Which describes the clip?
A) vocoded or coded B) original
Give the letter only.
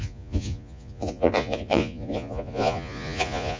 A